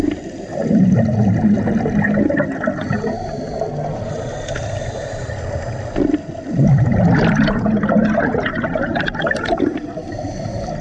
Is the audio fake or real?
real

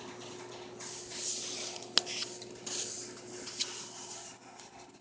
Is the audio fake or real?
real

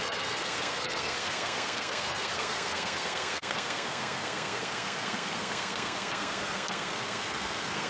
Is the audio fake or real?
fake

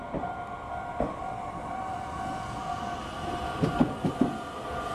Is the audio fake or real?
real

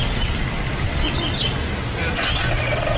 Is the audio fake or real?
real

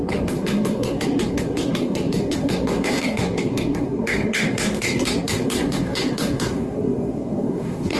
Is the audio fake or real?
fake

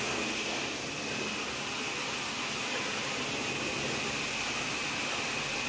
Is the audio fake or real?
real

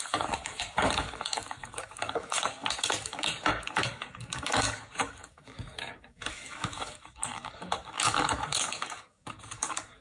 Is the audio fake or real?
fake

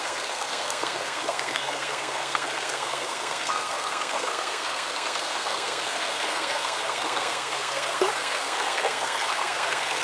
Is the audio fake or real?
fake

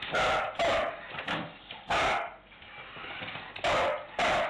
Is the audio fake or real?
real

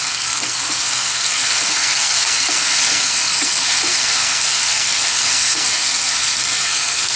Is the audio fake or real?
fake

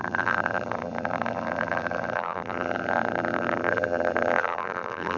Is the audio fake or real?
fake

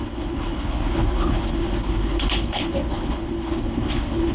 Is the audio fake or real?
fake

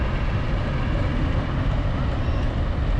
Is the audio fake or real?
real